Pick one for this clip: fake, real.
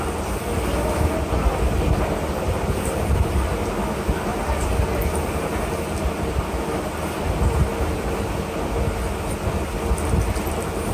real